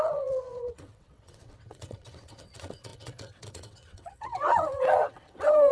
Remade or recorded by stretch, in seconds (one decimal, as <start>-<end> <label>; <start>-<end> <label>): 0.0-5.7 remade